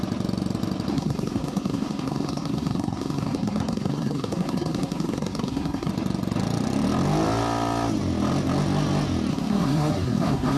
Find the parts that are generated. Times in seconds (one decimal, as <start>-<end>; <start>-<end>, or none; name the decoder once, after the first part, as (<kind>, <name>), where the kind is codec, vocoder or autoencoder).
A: 0.9-5.9 (codec, SNAC); 9.3-10.6